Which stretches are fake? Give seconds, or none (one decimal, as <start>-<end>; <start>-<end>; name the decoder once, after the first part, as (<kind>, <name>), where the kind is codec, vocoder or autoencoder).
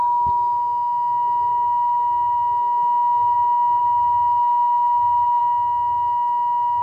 1.5-2.4 (autoencoder, DAC-VAE); 3.8-5.4